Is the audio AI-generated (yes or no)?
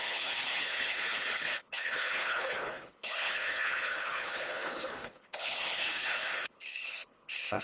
yes